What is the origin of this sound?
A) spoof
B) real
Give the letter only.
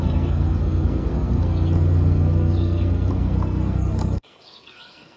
A